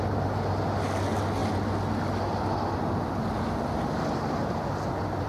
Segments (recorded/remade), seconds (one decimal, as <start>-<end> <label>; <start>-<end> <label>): 0.0-5.3 recorded